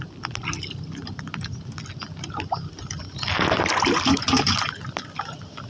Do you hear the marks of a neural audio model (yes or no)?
no